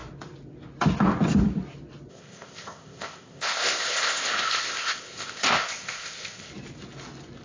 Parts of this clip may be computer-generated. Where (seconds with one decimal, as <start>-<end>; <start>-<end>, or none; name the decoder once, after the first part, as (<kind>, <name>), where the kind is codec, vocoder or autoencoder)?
2.1-6.5 (codec, ZipCodec)